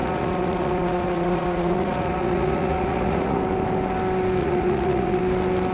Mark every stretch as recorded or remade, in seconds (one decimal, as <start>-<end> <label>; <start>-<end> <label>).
0.0-3.4 remade; 3.4-4.4 recorded; 4.4-5.2 remade; 5.2-5.7 recorded